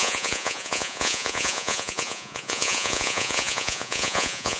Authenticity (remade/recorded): remade